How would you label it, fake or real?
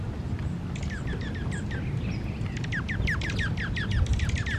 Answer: real